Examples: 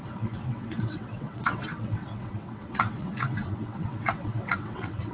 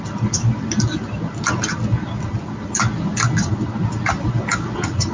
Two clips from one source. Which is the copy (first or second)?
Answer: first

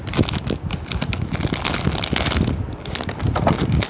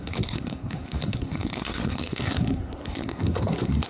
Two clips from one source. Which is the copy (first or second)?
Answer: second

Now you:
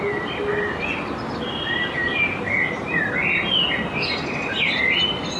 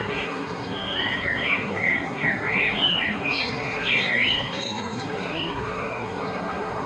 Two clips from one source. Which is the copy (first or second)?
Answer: second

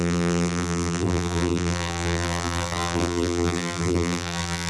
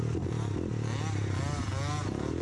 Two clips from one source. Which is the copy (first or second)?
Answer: first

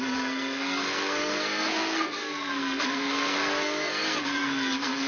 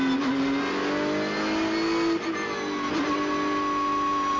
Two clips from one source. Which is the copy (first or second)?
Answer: first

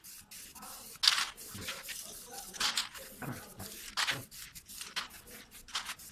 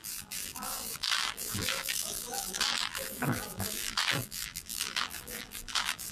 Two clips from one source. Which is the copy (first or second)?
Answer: second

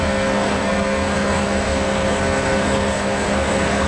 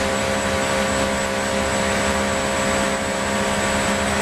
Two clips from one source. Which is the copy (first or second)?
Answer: first